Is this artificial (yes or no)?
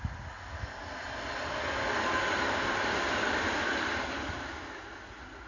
no